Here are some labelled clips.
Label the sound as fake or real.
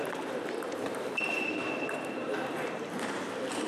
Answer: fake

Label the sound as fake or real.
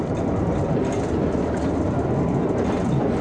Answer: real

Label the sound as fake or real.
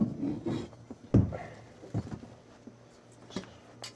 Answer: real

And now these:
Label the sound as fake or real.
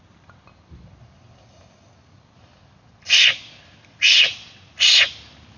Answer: real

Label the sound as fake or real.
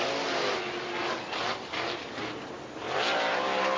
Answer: real